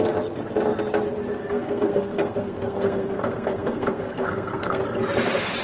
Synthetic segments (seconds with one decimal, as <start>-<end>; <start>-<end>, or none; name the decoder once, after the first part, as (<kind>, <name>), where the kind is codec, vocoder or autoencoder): 1.4-4.8 (codec, SNAC)

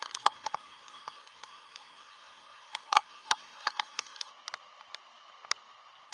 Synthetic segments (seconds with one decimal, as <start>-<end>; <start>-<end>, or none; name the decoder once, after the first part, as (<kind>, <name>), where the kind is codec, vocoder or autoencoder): 0.0-4.3 (codec, SNAC)

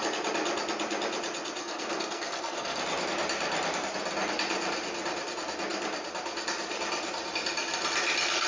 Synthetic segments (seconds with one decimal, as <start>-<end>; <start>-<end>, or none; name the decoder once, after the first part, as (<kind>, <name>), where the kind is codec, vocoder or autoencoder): 1.6-2.8 (codec, SNAC)

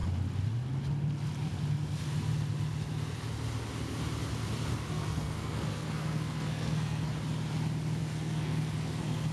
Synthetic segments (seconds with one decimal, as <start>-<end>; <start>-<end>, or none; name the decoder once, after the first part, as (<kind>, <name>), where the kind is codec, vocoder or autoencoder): 4.9-7.1 (codec, SNAC); 8.0-9.3

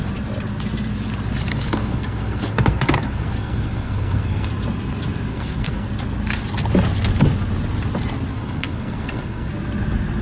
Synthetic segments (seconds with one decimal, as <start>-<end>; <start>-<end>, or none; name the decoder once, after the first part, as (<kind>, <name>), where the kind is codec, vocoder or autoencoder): 1.5-4.5 (codec, SNAC); 5.3-5.9; 8.3-9.5

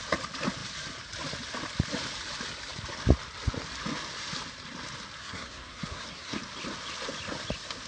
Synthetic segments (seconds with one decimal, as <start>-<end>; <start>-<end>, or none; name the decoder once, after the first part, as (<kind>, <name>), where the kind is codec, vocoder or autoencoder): 5.2-6.4 (codec, SNAC)

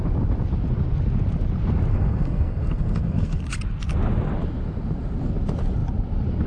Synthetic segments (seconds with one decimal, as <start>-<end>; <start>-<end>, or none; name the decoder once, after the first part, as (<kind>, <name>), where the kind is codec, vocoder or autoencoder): 1.9-3.4 (codec, SNAC)